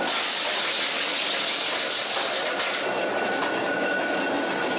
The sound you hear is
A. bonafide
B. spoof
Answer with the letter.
A